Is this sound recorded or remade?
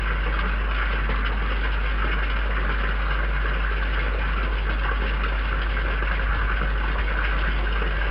recorded